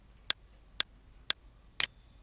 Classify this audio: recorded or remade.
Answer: recorded